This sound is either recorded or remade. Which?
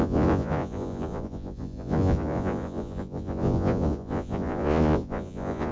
remade